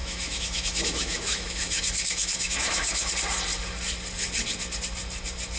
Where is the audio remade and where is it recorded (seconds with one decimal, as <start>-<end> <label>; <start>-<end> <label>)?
0.0-3.1 remade; 3.1-5.6 recorded